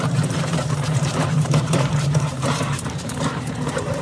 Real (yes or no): no